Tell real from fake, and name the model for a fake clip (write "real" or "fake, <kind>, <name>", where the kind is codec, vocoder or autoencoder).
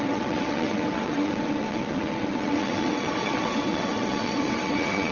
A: fake, vocoder, WaveNeXt